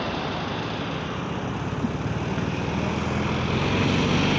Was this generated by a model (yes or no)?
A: no